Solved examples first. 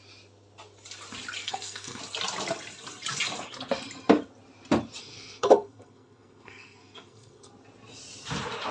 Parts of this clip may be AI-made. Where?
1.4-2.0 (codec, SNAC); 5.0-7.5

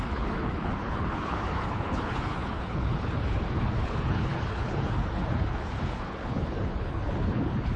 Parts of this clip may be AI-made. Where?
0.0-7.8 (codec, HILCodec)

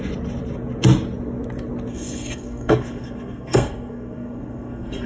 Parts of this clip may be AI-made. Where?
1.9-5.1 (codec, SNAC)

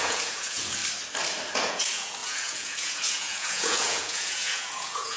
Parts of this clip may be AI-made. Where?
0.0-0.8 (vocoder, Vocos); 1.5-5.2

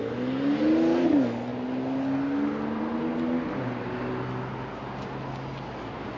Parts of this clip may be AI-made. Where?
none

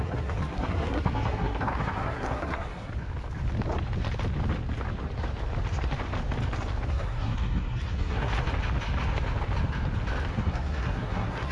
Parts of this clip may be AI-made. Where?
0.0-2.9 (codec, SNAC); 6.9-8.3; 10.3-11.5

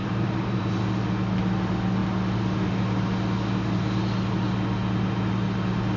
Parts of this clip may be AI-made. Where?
0.0-0.6 (vocoder, BigVGAN v2)